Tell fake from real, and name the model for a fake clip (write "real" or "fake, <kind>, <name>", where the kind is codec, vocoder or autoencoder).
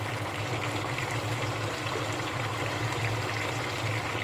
real